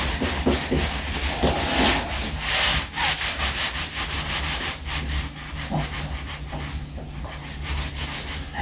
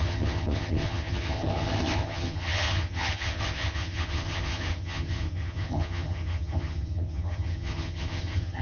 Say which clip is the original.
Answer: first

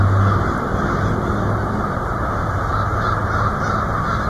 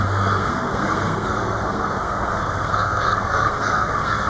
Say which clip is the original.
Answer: first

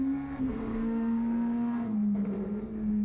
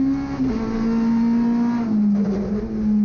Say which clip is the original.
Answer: second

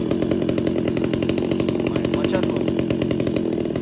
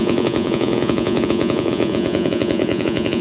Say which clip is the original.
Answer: first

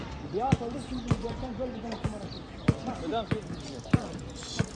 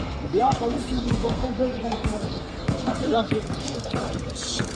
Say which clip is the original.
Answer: first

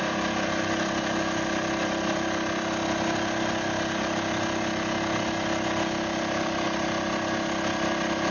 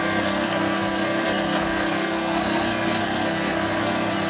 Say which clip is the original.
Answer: first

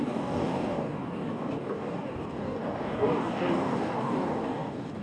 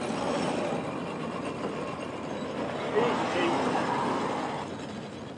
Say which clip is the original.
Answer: second